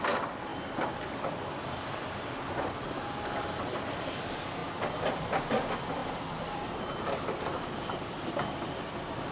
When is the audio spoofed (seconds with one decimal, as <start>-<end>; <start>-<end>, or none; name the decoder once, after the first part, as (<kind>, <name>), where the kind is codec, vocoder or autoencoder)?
0.0-4.6 (vocoder, BigVGAN v2); 5.2-9.3